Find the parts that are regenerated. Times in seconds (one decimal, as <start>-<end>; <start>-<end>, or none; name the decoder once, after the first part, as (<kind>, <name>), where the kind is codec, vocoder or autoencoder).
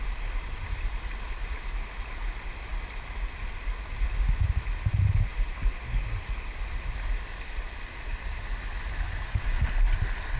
none